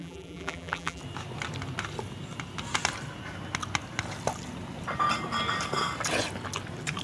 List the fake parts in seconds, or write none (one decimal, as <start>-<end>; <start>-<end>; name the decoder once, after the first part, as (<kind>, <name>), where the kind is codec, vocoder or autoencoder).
0.0-1.0 (vocoder, BigVGAN v2)